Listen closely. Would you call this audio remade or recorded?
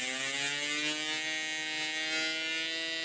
recorded